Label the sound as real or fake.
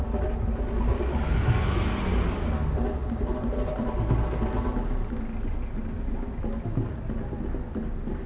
real